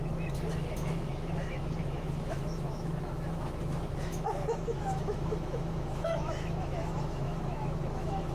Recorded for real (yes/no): no